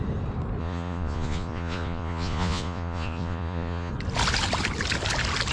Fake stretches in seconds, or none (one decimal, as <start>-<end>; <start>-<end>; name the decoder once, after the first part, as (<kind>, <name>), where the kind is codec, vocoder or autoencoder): 0.6-3.9 (vocoder, Vocos)